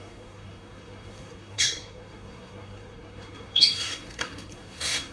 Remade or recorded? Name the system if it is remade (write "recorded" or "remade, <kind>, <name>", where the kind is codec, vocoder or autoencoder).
remade, codec, SNAC